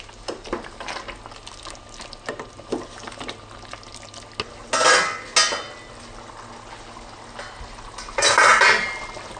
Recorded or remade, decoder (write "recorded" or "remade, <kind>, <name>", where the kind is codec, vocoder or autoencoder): recorded